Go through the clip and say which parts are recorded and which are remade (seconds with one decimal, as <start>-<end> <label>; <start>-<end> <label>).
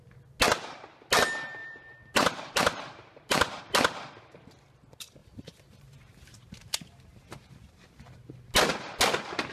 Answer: 0.0-1.6 recorded; 1.6-3.6 remade; 3.6-5.2 recorded; 5.2-8.1 remade; 8.1-9.5 recorded